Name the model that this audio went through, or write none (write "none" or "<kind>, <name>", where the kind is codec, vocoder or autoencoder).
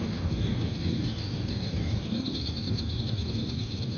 codec, DAC